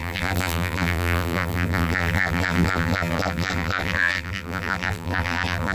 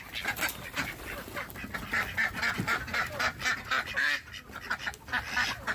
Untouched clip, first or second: second